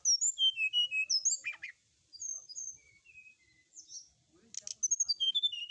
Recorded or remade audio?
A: recorded